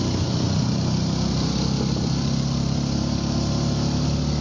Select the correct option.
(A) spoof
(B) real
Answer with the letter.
B